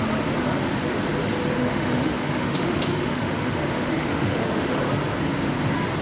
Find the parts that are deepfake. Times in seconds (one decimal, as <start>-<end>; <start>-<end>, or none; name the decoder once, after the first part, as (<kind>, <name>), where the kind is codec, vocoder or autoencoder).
1.6-4.8 (autoencoder, DAC-VAE)